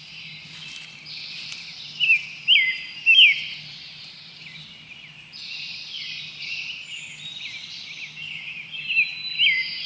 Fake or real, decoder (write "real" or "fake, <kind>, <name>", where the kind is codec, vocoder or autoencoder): real